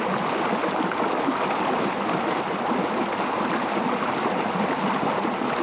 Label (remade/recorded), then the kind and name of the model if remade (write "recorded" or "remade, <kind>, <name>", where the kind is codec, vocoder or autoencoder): recorded